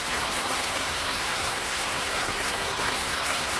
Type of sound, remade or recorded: remade